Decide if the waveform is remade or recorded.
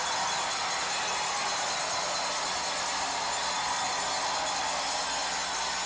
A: recorded